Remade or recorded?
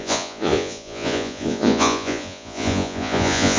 remade